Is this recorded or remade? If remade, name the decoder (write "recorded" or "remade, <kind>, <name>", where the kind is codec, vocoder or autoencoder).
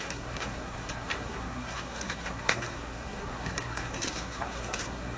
remade, codec, SNAC